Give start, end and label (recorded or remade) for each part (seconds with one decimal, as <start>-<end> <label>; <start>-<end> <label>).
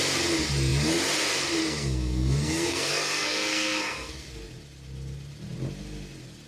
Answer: 0.0-1.6 recorded; 1.6-4.3 remade; 4.3-6.5 recorded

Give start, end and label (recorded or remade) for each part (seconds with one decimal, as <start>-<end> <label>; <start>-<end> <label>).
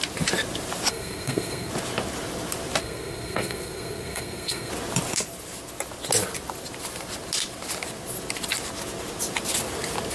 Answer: 0.0-0.9 recorded; 0.9-1.7 remade; 1.7-2.8 recorded; 2.8-4.7 remade; 4.7-10.1 recorded